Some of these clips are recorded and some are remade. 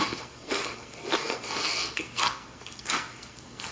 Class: remade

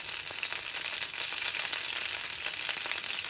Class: recorded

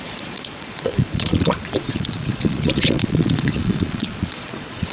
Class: remade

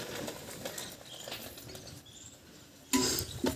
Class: recorded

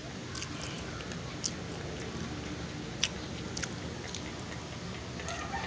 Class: recorded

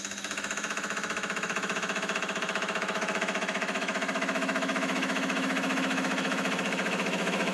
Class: remade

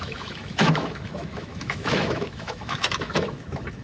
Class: remade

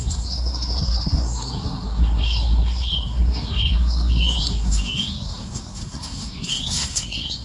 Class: remade